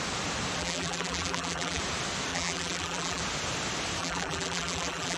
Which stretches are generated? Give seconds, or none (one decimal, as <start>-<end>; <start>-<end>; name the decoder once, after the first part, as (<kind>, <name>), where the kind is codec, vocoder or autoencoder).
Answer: 0.6-1.8 (vocoder, BigVGAN v2); 2.3-3.2; 4.0-5.2